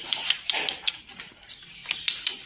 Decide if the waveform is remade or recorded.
recorded